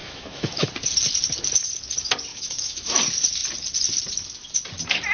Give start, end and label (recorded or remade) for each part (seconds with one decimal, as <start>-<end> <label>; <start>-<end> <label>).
0.0-0.7 remade; 0.7-2.3 recorded; 2.3-3.0 remade; 3.0-5.1 recorded